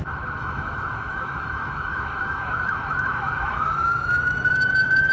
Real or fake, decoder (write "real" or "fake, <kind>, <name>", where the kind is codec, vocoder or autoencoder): fake, autoencoder, DAC-VAE